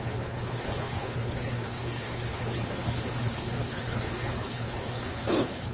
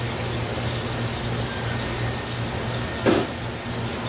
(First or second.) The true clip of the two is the second